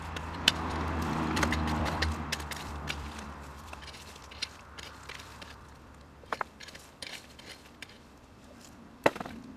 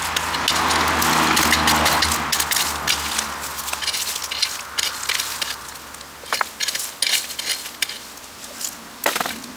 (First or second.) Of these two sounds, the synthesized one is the first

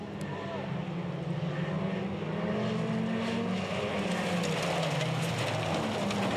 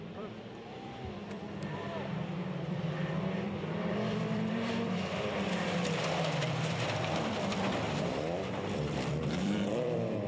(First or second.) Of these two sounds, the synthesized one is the second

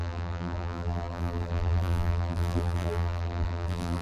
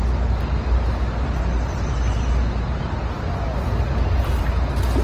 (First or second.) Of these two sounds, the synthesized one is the first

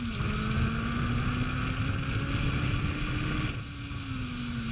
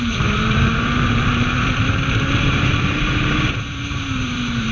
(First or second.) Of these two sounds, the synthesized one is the second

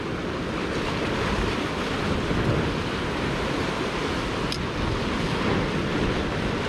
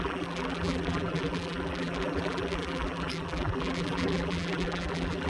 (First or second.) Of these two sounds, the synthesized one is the second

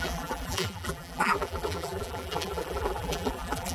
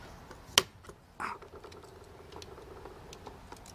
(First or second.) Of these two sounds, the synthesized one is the first